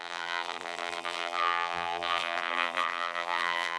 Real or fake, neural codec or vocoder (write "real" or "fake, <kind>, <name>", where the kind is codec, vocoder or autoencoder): fake, vocoder, BigVGAN v2